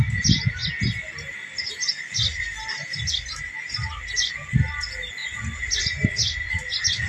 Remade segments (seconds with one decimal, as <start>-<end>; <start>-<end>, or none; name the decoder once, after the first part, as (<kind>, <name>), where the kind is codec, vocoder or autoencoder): 2.3-3.3 (vocoder, BigVGAN v2); 5.2-5.8